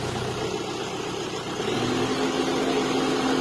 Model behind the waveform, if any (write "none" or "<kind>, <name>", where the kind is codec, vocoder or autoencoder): none